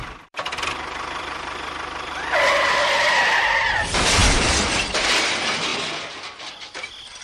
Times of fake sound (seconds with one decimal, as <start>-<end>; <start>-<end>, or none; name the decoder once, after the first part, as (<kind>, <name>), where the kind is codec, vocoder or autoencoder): 0.0-5.7 (vocoder, BigVGAN v2); 6.4-7.2

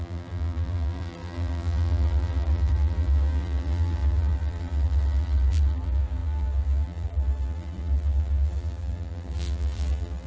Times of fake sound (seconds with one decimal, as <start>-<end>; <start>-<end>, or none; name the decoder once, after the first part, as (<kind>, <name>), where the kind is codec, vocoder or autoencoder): 0.0-10.3 (vocoder, BigVGAN v2)

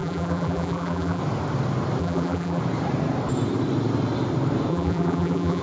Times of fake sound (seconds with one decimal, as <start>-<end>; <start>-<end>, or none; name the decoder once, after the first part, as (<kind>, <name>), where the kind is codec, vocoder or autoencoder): 0.0-1.2 (vocoder, BigVGAN v2); 2.0-2.6; 4.7-5.6

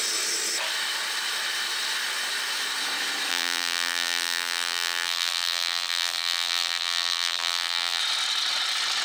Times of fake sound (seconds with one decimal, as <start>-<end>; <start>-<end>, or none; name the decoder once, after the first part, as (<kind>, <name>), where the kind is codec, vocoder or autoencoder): 3.3-8.0 (vocoder, BigVGAN v2)

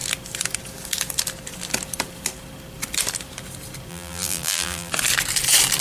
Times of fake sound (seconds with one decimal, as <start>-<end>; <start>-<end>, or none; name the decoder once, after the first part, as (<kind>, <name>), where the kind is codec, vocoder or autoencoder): 3.9-4.9 (vocoder, BigVGAN v2)